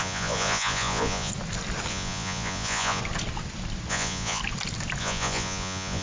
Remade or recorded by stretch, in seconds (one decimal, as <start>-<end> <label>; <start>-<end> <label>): 0.0-1.3 remade; 1.3-1.9 recorded; 1.9-3.0 remade; 3.0-3.9 recorded; 3.9-4.4 remade; 4.4-5.0 recorded; 5.0-6.0 remade